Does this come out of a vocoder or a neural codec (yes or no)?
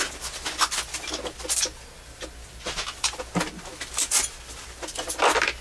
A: no